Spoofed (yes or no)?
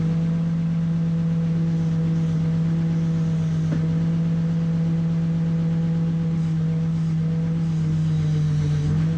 no